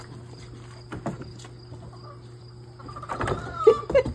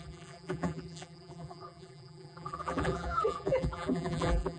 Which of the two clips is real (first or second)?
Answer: first